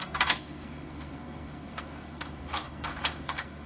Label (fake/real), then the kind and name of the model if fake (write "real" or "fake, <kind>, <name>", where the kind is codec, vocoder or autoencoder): fake, codec, SNAC